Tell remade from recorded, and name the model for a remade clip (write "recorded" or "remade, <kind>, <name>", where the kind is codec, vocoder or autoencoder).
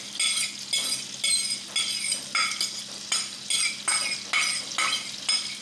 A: recorded